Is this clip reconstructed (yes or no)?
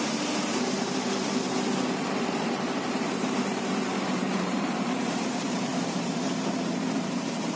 yes